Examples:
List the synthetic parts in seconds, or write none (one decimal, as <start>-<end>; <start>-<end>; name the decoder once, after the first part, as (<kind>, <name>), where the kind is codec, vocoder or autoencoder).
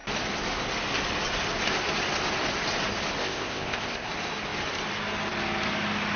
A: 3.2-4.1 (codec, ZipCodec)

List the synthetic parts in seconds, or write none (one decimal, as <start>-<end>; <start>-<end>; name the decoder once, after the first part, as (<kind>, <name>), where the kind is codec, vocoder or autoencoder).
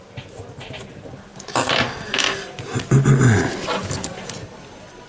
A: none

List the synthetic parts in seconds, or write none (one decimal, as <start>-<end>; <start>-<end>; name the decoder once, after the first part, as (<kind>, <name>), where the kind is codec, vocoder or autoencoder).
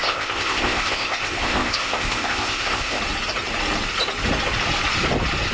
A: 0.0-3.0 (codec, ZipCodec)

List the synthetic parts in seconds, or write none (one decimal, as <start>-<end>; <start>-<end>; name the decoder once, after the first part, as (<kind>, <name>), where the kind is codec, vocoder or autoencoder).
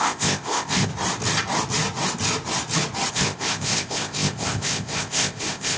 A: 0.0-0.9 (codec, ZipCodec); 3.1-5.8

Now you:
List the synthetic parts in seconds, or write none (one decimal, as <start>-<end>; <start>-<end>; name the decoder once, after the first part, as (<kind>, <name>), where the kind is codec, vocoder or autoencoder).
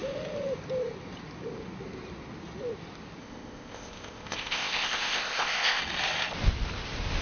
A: 3.2-5.8 (codec, ZipCodec)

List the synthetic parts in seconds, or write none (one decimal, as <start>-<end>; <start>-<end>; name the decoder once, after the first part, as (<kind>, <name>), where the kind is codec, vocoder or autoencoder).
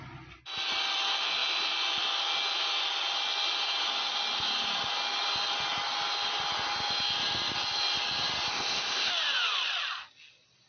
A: 8.5-9.1 (codec, ZipCodec)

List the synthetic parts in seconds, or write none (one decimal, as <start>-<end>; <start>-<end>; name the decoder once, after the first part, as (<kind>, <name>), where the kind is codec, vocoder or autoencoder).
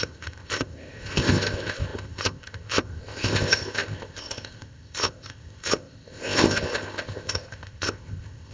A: 0.0-8.5 (codec, ZipCodec)